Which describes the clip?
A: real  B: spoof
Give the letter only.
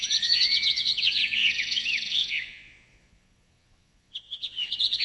B